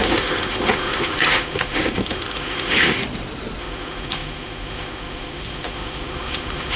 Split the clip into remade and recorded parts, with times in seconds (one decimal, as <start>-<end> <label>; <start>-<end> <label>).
0.0-3.0 remade; 3.0-3.6 recorded; 3.6-6.8 remade